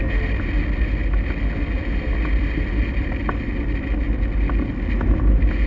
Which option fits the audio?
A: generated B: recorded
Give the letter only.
B